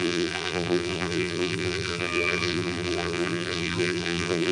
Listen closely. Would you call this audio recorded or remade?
remade